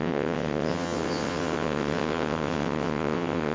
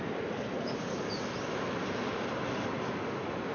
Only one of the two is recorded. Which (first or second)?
second